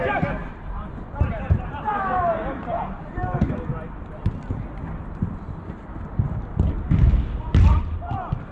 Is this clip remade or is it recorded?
recorded